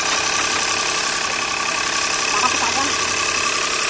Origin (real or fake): real